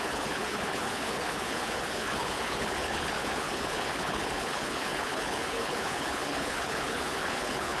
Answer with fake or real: fake